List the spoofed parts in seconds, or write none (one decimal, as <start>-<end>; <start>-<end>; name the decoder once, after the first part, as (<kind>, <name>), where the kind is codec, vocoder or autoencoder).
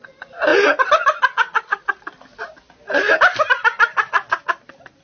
none